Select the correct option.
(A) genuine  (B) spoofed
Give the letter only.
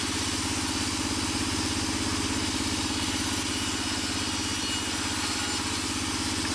A